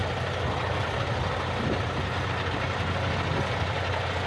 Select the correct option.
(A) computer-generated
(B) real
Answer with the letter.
B